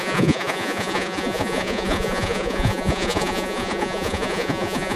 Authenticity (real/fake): fake